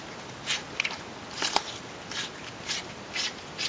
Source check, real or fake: real